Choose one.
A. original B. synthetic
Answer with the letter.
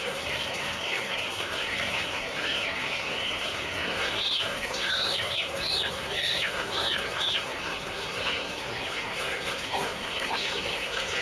B